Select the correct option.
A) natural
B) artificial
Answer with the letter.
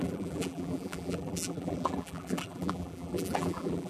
B